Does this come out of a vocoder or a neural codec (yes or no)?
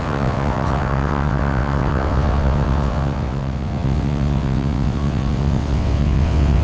yes